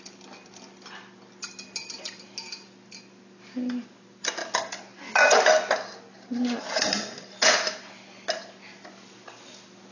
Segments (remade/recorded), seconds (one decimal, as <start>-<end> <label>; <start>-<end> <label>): 0.0-9.9 recorded